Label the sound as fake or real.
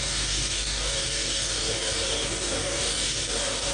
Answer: fake